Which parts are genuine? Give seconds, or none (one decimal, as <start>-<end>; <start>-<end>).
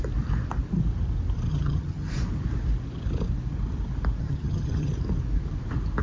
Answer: 0.0-1.5; 2.1-4.2; 4.9-6.0